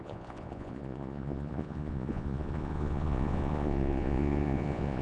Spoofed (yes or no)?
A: yes